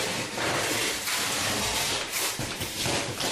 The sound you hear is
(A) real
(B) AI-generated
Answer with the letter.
B